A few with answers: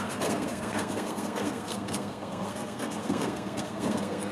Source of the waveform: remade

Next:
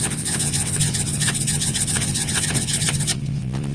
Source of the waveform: remade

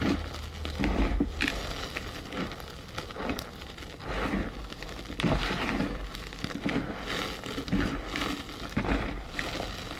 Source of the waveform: recorded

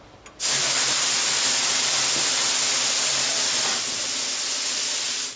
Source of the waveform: recorded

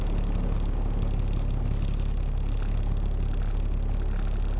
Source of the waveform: recorded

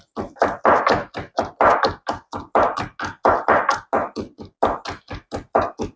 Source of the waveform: recorded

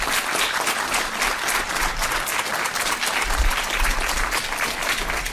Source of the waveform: recorded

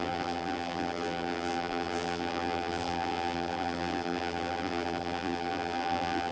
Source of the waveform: remade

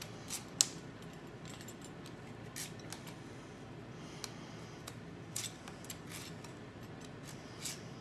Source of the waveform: recorded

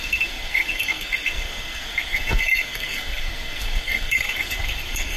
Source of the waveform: remade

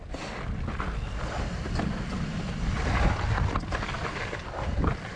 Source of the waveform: recorded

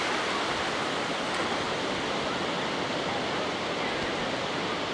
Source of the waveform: recorded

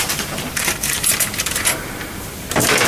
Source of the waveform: remade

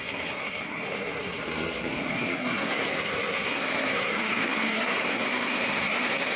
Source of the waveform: remade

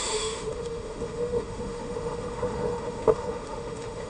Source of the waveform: remade